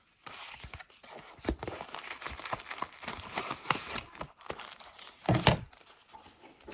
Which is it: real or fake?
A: real